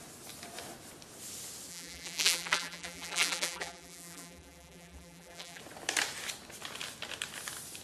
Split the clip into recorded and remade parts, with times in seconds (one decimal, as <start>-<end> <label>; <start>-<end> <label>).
0.0-1.7 recorded; 1.7-5.6 remade; 5.6-7.8 recorded